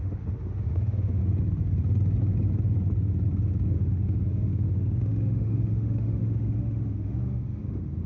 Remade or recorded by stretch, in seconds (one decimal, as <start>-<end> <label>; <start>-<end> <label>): 0.0-1.2 remade; 1.2-3.7 recorded; 3.7-8.1 remade